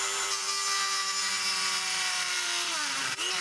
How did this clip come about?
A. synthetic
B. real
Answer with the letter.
A